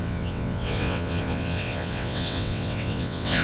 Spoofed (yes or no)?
yes